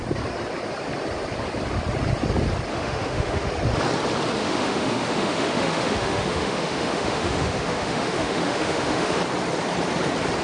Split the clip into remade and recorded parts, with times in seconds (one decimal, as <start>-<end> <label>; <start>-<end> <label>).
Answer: 0.0-2.7 recorded; 2.7-3.5 remade; 3.5-4.4 recorded; 4.4-9.2 remade; 9.2-10.4 recorded